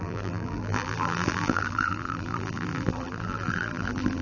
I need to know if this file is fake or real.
fake